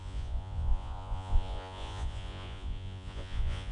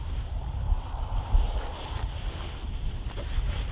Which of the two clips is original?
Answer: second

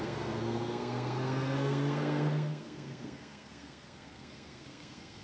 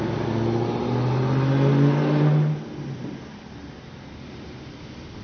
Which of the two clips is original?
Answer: second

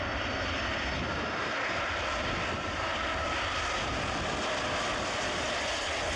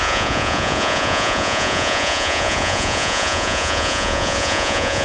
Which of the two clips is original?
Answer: first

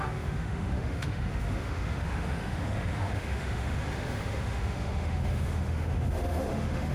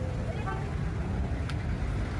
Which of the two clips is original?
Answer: second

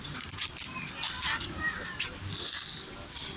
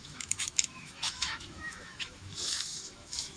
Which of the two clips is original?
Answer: first